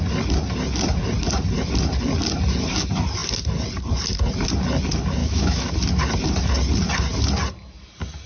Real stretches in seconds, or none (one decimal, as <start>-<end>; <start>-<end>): 0.0-5.2; 5.7-8.3